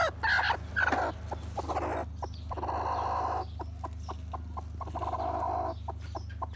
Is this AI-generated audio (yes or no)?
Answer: no